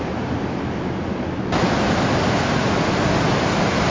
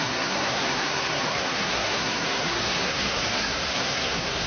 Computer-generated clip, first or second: second